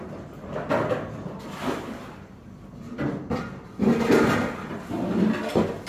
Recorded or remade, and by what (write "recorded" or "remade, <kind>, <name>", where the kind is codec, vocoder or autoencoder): recorded